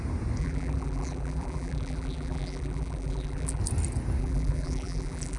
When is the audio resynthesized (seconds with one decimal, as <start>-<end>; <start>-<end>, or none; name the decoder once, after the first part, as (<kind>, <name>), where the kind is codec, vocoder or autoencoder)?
0.4-3.6 (vocoder, BigVGAN v2); 4.2-5.4